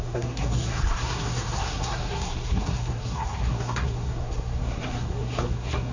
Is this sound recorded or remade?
remade